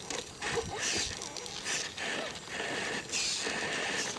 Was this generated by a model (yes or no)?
no